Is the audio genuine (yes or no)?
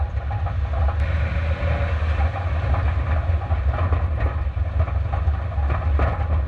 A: yes